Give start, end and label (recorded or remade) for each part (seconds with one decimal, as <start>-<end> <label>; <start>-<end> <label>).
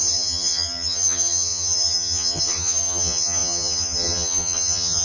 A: 0.0-5.0 remade